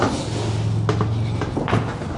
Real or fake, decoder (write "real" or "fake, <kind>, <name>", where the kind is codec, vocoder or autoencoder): real